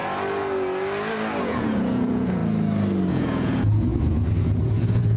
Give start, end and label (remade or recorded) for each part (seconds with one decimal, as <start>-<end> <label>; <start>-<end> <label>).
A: 0.0-1.4 recorded; 1.4-2.4 remade; 2.4-3.1 recorded; 3.1-5.2 remade